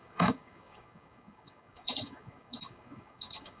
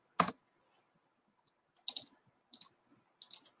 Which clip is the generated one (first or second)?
first